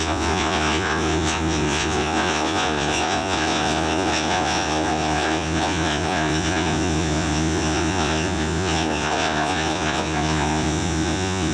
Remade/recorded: remade